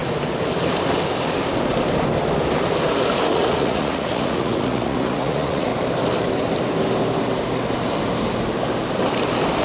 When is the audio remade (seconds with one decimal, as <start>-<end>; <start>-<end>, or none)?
3.3-5.7